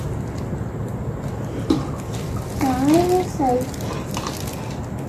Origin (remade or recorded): recorded